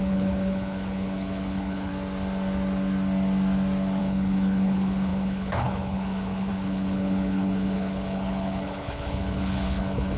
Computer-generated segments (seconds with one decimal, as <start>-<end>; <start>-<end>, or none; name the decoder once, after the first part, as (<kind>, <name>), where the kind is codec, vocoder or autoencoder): 0.0-1.9 (codec, HILCodec); 4.0-10.2